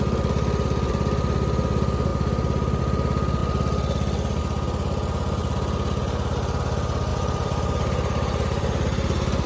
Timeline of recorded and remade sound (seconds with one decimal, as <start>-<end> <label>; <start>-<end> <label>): 0.0-7.1 recorded; 7.1-9.5 remade